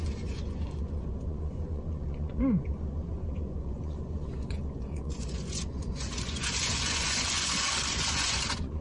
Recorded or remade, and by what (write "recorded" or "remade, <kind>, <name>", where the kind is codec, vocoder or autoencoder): remade, vocoder, Vocos